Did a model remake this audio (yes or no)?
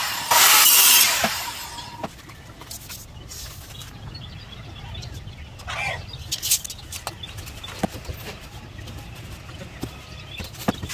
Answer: no